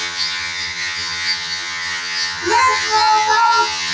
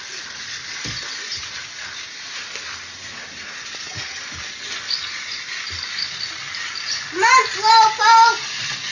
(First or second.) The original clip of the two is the second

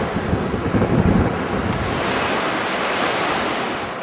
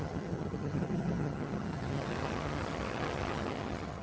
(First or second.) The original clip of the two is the first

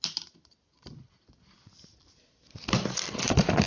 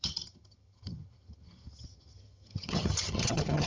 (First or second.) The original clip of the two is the first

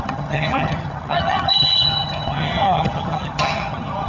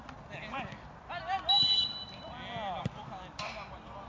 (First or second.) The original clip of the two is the second